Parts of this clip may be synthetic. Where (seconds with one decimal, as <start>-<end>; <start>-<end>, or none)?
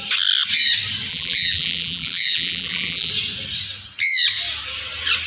1.1-3.1